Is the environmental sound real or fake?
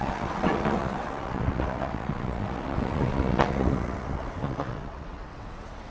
fake